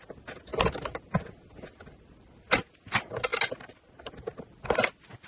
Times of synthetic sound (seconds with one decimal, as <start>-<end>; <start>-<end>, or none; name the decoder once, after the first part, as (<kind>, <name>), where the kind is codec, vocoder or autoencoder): none